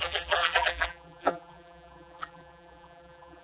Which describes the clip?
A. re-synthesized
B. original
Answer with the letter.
A